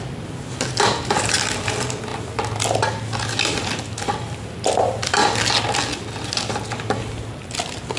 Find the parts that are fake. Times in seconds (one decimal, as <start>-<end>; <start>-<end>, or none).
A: none